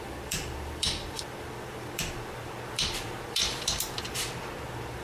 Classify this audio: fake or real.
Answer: fake